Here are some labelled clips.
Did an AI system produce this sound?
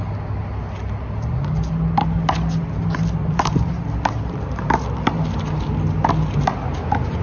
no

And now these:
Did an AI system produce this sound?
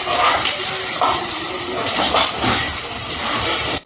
no